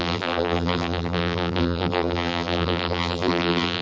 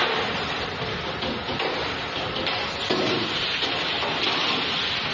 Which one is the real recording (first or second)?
second